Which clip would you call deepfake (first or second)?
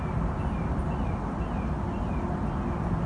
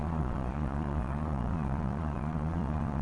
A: second